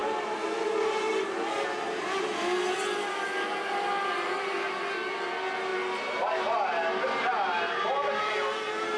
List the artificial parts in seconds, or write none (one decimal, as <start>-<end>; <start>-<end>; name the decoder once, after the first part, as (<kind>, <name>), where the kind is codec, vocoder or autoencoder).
none